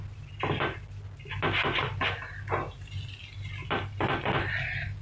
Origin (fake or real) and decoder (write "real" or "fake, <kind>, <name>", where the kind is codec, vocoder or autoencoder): real